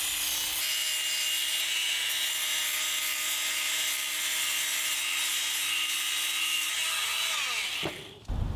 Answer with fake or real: real